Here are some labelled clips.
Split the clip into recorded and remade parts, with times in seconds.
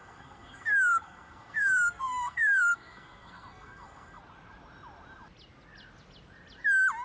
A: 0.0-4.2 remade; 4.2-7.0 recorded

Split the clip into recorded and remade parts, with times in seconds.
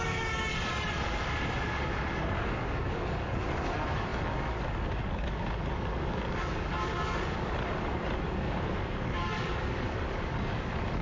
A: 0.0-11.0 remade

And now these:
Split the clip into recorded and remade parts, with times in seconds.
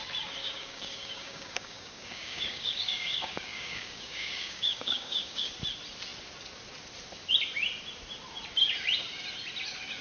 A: 0.0-0.4 recorded; 0.4-5.5 remade; 5.5-10.0 recorded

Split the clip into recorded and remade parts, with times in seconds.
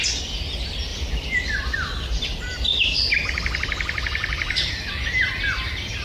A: 0.0-0.9 recorded; 0.9-1.5 remade; 1.5-2.7 recorded; 2.7-4.9 remade; 4.9-6.0 recorded